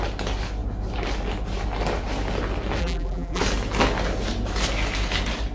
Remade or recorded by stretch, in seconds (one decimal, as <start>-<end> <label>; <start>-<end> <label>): 0.0-2.8 recorded; 2.8-3.4 remade; 3.4-5.5 recorded